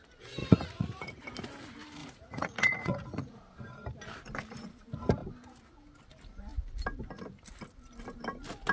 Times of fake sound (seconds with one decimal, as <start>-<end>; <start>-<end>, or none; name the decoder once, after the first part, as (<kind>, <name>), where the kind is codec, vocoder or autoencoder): 0.4-1.2 (vocoder, Vocos); 2.0-3.4